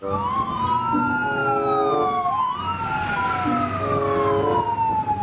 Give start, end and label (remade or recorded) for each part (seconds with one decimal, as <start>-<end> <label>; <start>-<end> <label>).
0.0-5.2 recorded